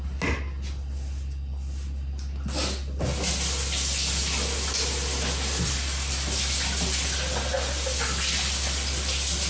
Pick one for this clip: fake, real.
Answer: real